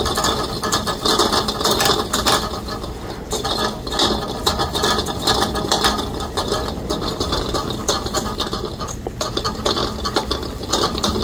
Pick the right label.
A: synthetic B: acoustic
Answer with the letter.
B